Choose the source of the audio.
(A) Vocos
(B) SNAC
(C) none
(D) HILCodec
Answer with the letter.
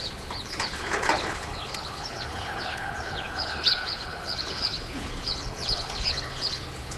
D